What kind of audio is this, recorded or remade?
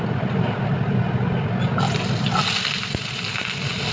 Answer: recorded